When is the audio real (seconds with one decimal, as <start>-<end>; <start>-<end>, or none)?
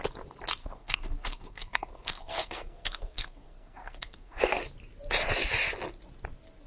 0.0-0.6; 4.6-6.7